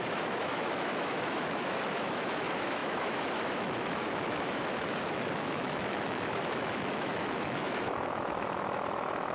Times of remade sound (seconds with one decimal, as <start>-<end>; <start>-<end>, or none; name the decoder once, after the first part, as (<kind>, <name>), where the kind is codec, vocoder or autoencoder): 0.0-9.3 (autoencoder, DAC-VAE)